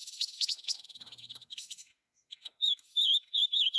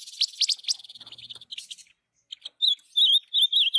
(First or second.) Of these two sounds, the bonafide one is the second